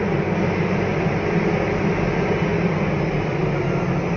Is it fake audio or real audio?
real